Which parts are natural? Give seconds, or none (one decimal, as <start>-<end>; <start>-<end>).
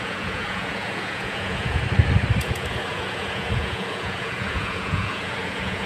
1.8-2.4